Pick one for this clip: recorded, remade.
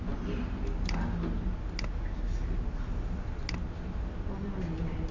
recorded